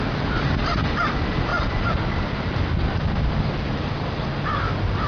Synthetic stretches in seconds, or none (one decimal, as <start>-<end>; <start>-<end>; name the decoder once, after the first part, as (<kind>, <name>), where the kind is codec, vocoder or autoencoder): 1.5-4.2 (vocoder, BigVGAN v2)